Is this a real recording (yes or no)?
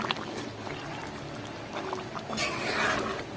yes